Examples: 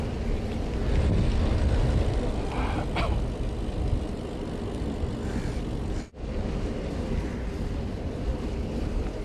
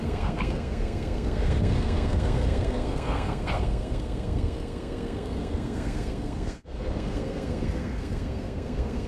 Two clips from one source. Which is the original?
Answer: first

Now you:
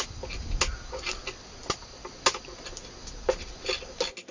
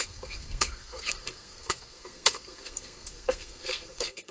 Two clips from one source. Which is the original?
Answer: first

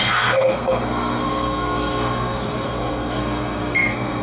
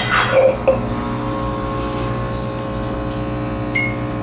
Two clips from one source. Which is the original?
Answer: second